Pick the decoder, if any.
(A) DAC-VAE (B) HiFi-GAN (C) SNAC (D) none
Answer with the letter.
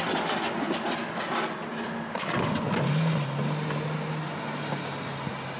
D